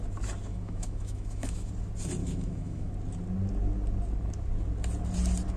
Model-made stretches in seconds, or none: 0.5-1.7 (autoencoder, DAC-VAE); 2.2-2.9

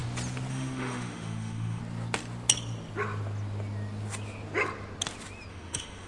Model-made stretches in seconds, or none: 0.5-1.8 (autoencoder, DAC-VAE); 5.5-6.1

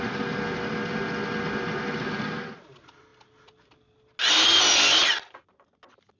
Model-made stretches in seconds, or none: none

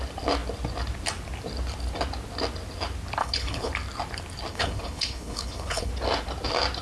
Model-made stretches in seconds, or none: 3.2-3.7 (codec, HILCodec); 4.5-5.9

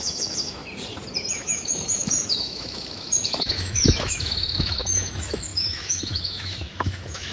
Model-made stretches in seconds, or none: 0.0-0.6 (autoencoder, DAC-VAE); 1.3-7.3

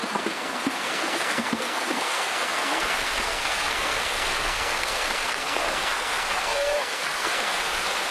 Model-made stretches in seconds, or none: 0.0-8.1 (codec, SNAC)

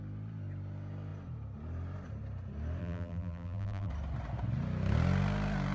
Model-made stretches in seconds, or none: 2.8-3.9 (vocoder, BigVGAN v2)

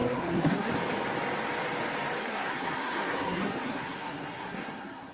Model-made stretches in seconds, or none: 0.0-0.7 (codec, SNAC); 2.2-5.1